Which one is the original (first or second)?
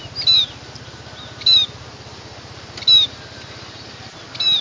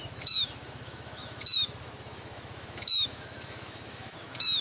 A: first